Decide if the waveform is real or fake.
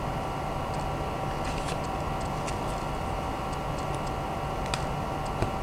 real